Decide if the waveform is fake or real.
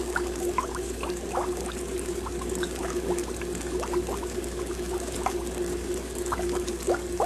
fake